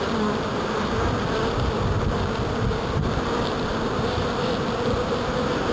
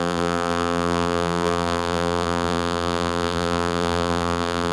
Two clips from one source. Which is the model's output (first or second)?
second